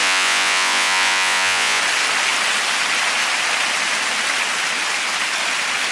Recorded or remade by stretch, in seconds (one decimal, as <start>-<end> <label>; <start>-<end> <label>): 0.0-1.8 remade; 1.8-5.9 recorded